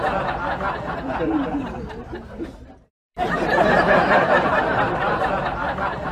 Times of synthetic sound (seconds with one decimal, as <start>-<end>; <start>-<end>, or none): 2.0-6.1